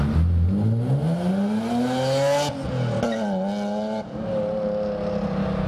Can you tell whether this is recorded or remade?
recorded